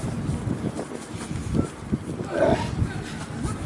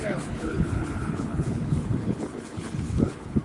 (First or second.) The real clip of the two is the first